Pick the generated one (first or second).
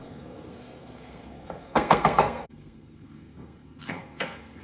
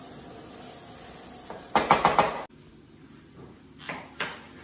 first